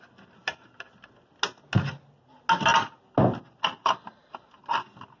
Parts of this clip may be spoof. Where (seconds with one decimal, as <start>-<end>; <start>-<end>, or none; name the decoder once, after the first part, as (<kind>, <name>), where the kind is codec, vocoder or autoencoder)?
3.8-4.5 (vocoder, BigVGAN v2)